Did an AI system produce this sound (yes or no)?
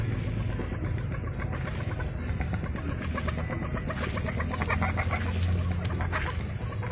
no